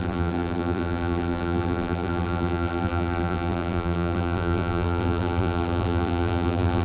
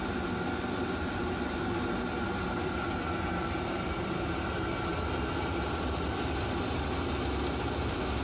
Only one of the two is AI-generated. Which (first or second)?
first